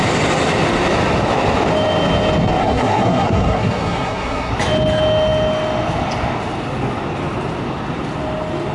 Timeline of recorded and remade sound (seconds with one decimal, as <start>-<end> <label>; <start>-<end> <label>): 0.0-2.6 recorded; 2.6-4.5 remade; 4.5-8.7 recorded